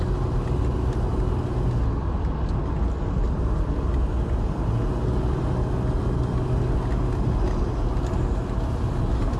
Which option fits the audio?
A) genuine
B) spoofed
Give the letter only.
A